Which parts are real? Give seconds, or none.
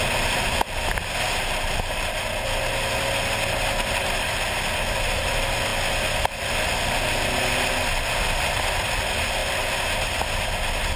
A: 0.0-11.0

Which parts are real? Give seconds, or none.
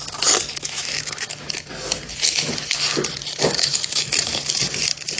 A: 0.0-0.5; 1.7-3.5; 4.3-5.2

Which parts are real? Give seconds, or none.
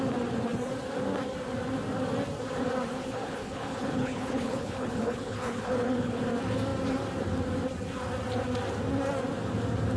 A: 0.0-2.9; 6.2-10.0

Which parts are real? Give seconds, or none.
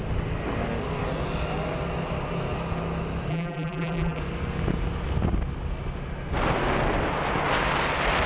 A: 0.0-3.3; 4.2-8.3